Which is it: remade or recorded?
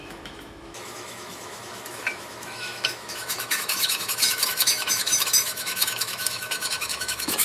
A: remade